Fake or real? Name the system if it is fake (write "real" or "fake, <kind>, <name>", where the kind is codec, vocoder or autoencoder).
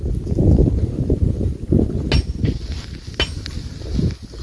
real